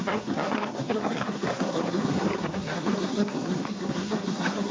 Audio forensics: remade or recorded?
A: remade